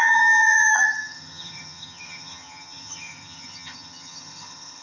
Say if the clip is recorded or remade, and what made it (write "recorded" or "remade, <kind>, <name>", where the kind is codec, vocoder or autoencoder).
remade, vocoder, HiFi-GAN